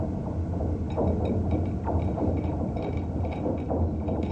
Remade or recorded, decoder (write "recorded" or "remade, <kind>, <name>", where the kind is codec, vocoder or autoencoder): recorded